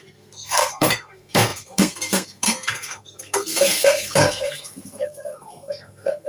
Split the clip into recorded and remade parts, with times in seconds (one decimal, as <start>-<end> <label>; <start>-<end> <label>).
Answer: 0.0-6.3 remade